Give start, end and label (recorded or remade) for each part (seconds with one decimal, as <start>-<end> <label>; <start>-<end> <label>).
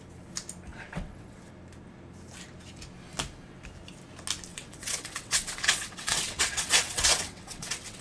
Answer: 0.0-0.7 recorded; 0.7-1.5 remade; 1.5-4.5 recorded; 4.5-8.0 remade